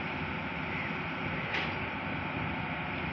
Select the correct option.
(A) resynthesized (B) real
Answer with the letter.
B